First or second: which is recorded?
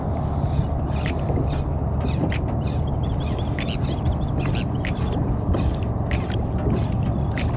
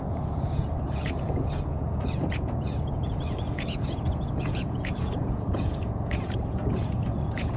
first